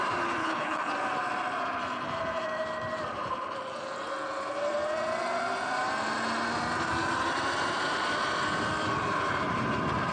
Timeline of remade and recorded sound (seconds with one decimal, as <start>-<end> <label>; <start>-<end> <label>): 0.0-0.4 recorded; 0.4-0.9 remade; 0.9-10.1 recorded